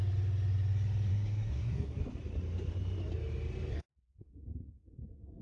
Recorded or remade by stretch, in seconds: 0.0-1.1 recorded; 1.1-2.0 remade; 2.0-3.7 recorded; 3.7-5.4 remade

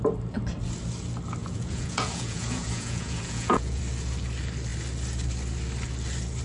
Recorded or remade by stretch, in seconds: 0.0-1.4 recorded; 1.4-3.8 remade; 3.8-6.4 recorded

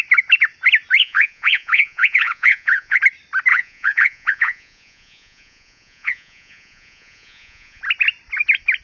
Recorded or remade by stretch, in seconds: 0.0-1.0 recorded; 1.0-3.0 remade; 3.0-3.5 recorded; 3.5-7.8 remade; 7.8-8.8 recorded